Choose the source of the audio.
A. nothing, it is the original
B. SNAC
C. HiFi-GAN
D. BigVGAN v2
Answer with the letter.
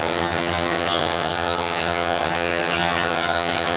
C